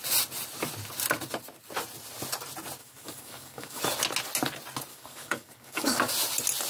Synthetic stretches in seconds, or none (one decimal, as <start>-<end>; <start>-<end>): 2.8-3.8; 4.9-6.1